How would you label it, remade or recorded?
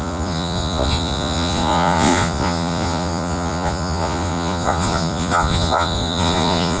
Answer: remade